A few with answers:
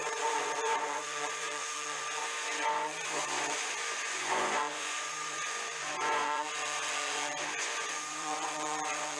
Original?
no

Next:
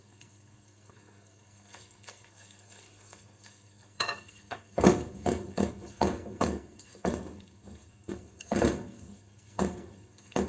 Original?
no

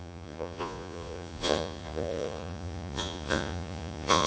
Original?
no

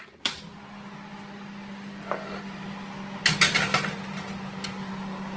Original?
yes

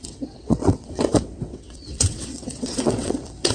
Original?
no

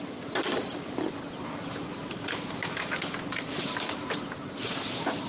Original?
no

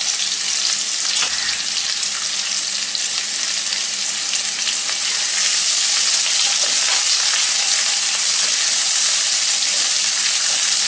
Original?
yes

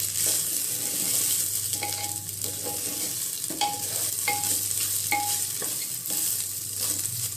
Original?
yes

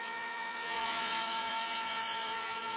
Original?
no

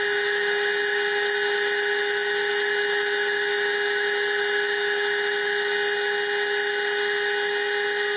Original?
yes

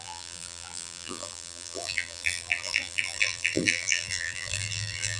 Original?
no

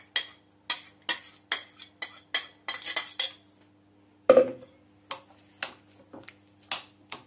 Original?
yes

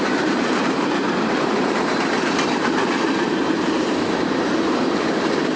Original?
no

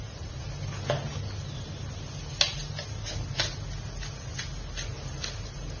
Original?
yes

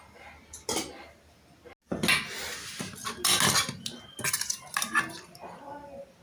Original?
yes